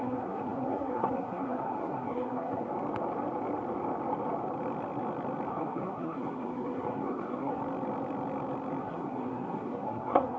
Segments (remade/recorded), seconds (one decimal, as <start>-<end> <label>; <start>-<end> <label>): 0.0-2.7 remade; 2.7-5.5 recorded; 5.5-7.6 remade; 7.6-8.8 recorded; 8.8-10.4 remade